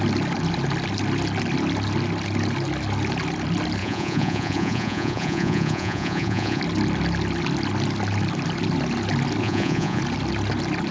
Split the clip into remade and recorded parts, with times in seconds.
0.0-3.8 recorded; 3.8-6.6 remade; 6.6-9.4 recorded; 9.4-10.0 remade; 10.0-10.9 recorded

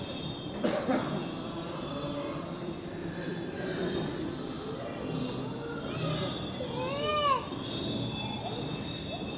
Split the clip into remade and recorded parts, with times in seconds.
0.0-3.0 recorded; 3.0-3.9 remade; 3.9-9.4 recorded

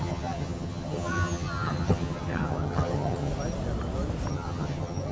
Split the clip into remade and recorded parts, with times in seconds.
0.0-3.3 remade; 3.3-4.3 recorded; 4.3-5.1 remade